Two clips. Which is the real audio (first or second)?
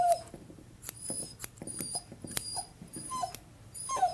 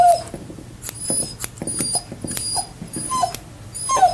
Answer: second